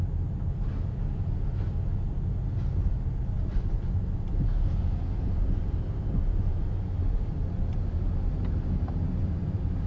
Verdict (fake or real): real